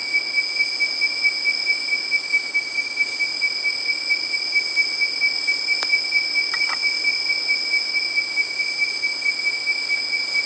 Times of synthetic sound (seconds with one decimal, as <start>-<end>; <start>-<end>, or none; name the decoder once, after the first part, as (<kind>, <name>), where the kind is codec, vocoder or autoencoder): none